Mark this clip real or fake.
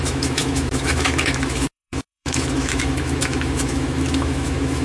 fake